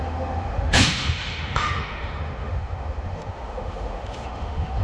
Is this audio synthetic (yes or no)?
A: yes